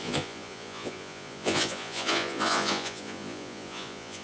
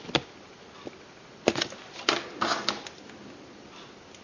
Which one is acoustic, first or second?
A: second